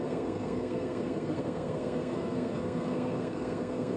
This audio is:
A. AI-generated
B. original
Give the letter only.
A